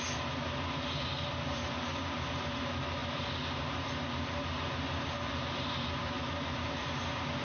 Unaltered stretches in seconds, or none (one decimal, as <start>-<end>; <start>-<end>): 0.0-7.4